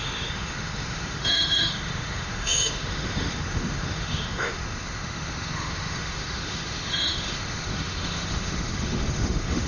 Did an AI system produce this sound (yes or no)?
yes